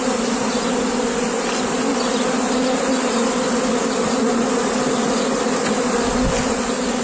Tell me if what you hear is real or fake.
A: real